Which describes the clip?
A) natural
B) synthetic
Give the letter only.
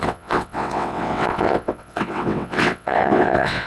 B